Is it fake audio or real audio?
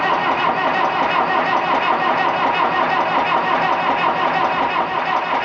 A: real